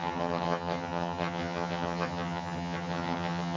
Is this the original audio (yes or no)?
no